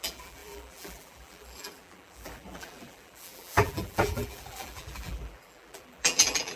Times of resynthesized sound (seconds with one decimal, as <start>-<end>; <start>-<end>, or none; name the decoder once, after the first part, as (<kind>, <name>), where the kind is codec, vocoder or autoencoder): 0.0-6.6 (vocoder, BigVGAN v2)